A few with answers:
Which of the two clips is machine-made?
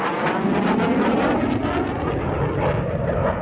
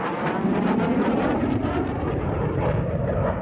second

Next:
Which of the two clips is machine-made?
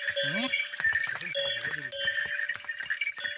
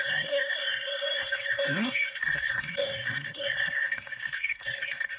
second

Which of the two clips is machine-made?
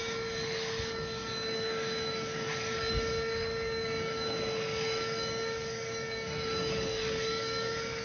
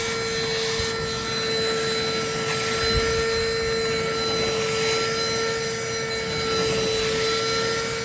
first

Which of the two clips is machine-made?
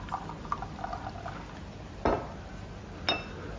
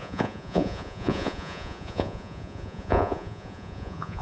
second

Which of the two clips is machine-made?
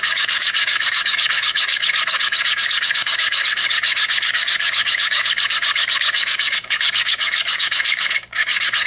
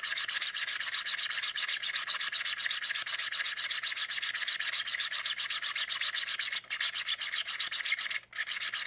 first